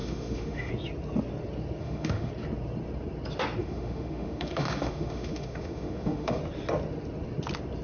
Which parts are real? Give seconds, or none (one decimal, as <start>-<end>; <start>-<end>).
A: 0.7-1.8; 2.3-3.6; 6.4-7.8